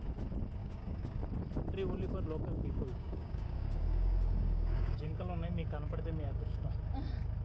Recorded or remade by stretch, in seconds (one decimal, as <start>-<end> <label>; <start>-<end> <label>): 0.0-0.6 recorded; 0.6-1.2 remade; 1.2-2.6 recorded; 2.6-6.7 remade; 6.7-7.4 recorded